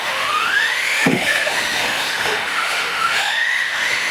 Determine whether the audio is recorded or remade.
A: remade